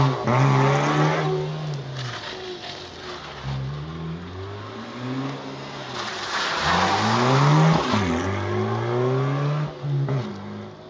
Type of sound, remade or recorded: recorded